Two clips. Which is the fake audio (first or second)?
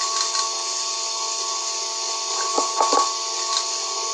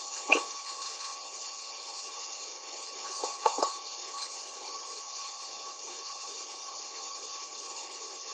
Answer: second